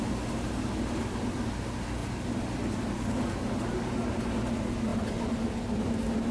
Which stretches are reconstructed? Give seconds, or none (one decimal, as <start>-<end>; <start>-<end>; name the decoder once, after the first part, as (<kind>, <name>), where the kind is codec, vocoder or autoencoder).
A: none